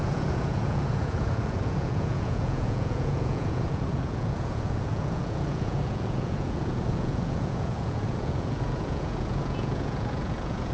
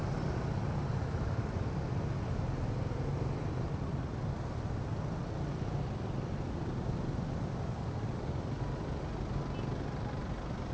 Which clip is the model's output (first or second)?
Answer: first